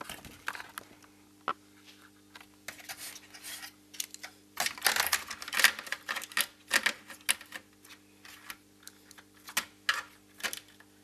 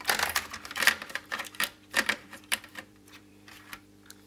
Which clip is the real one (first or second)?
first